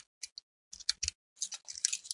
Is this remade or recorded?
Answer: recorded